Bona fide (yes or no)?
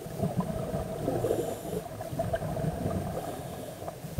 yes